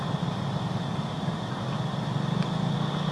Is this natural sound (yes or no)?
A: yes